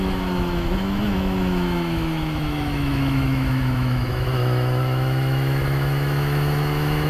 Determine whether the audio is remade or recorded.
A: remade